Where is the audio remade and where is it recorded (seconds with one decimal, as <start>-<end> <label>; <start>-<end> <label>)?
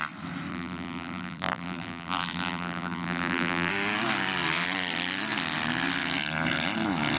0.0-0.5 recorded; 0.5-3.7 remade; 3.7-7.2 recorded